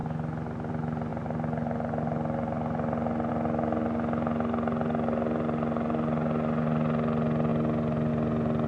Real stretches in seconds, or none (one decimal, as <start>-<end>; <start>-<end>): 0.0-8.7